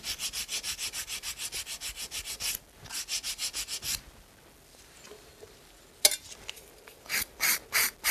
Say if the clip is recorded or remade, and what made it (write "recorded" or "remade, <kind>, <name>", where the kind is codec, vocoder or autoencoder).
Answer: recorded